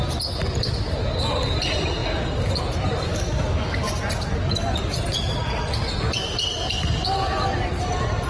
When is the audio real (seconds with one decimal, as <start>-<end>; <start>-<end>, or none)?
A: 0.0-3.1; 3.9-8.3